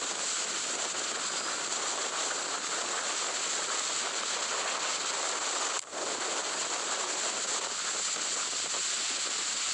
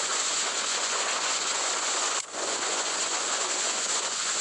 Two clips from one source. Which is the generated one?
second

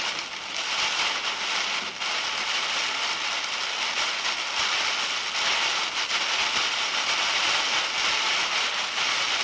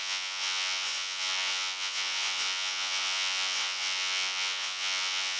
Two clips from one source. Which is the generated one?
second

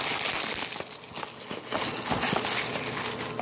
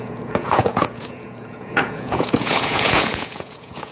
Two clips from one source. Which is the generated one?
second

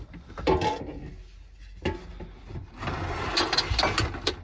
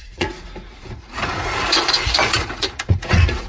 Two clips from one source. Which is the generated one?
second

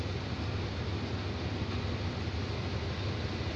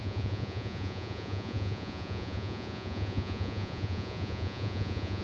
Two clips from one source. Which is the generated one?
second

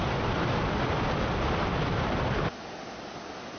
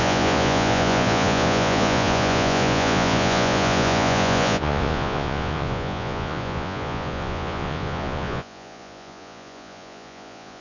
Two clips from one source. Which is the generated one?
second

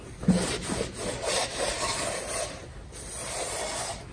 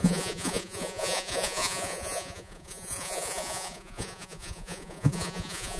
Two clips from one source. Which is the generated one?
second